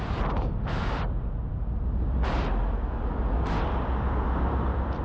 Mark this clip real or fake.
real